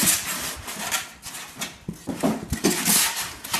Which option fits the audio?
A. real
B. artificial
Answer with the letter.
A